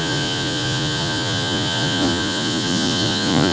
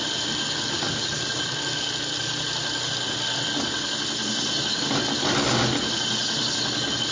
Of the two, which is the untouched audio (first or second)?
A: second